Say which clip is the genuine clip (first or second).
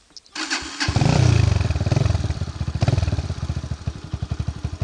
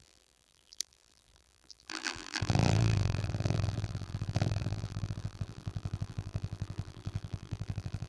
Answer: first